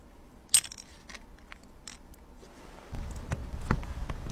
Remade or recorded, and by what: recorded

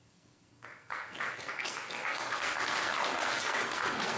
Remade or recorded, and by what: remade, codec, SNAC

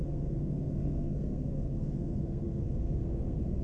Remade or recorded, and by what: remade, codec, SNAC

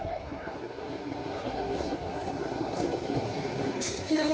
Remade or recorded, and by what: remade, codec, SNAC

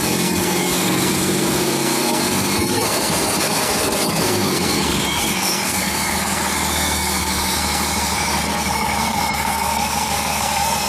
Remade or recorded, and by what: remade, codec, SNAC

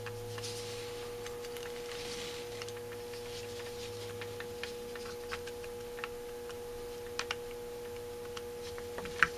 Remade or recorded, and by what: recorded